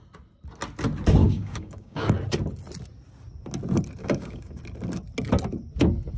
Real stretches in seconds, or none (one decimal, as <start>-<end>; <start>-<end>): 0.0-1.2; 2.1-4.0; 4.6-6.2